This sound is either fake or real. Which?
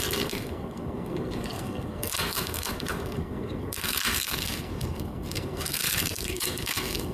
fake